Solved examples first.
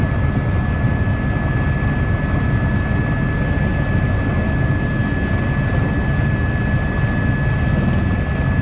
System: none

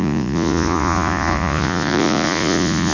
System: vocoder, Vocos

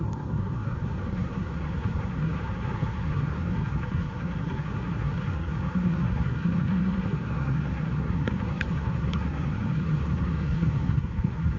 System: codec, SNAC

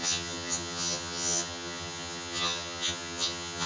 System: vocoder, HiFi-GAN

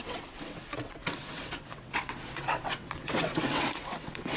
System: vocoder, WaveNeXt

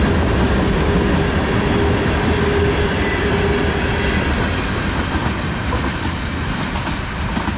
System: none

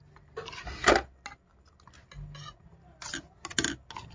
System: none